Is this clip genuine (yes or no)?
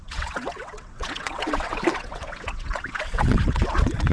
no